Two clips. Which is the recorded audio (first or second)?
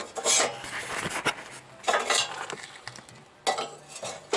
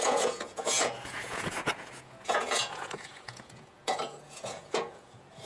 first